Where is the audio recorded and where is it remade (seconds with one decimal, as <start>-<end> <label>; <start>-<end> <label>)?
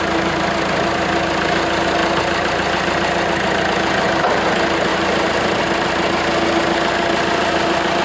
0.0-4.9 recorded; 4.9-5.6 remade; 5.6-8.0 recorded